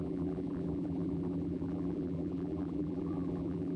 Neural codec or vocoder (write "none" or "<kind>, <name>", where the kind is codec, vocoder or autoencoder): vocoder, BigVGAN v2